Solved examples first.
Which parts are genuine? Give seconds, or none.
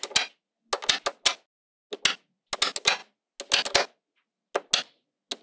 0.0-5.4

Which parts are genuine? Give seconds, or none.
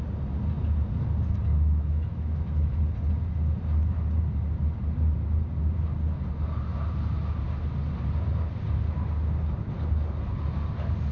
0.0-1.5; 2.8-11.1